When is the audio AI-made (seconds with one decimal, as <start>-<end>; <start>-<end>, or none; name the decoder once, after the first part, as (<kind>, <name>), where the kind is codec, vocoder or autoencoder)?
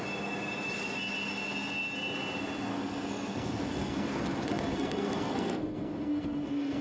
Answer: 2.7-6.8 (codec, SNAC)